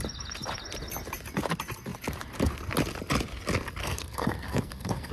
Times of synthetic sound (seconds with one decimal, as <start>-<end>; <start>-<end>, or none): 3.8-5.1